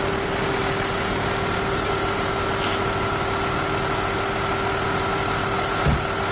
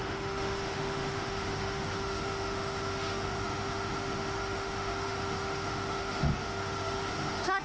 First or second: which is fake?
second